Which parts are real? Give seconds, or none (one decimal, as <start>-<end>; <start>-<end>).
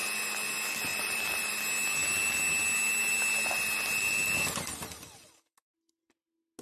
0.0-0.9; 1.5-6.6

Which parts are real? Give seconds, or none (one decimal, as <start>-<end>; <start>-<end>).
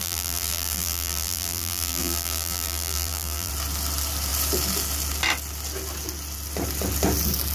3.5-7.5